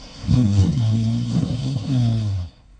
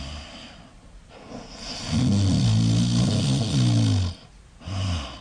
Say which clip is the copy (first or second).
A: first